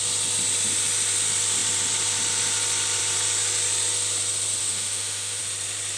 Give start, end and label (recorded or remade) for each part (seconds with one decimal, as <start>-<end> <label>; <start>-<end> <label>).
0.0-4.6 recorded; 4.6-5.4 remade; 5.4-6.0 recorded